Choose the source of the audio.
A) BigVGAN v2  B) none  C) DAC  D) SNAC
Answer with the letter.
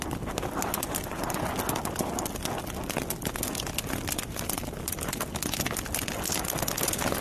B